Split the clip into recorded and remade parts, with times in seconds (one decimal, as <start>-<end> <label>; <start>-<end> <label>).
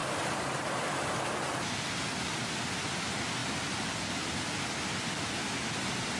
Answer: 0.0-2.1 recorded; 2.1-6.2 remade